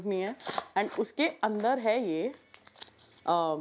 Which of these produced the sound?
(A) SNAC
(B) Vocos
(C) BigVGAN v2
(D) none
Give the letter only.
D